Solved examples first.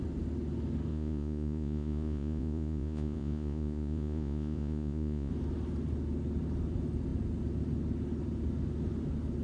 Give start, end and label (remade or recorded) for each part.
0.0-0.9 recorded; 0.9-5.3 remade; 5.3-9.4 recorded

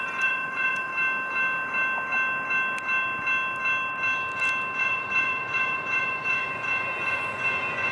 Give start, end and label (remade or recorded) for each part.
0.0-0.9 remade; 0.9-4.8 recorded; 4.8-7.9 remade

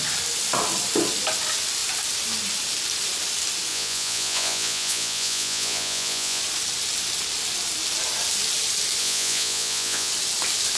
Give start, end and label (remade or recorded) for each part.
0.0-3.7 recorded; 3.7-6.4 remade; 6.4-9.0 recorded; 9.0-10.1 remade; 10.1-10.8 recorded

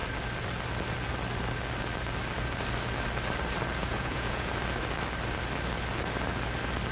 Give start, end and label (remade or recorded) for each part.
0.0-3.8 recorded; 3.8-4.5 remade; 4.5-6.9 recorded

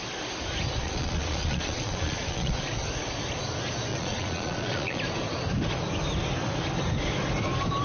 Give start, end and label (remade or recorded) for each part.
0.0-0.8 recorded; 0.8-2.6 remade; 2.6-3.9 recorded; 3.9-5.0 remade; 5.0-7.8 recorded

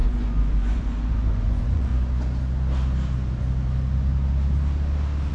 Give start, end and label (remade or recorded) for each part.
0.0-1.9 remade; 1.9-5.3 recorded

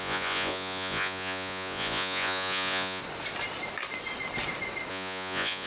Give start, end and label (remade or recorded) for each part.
0.0-3.0 remade; 3.0-4.9 recorded; 4.9-5.7 remade